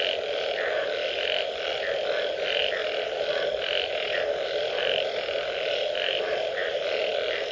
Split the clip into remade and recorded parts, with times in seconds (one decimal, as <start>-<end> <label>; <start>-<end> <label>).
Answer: 0.0-7.5 recorded